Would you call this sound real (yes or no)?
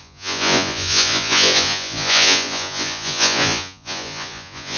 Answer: no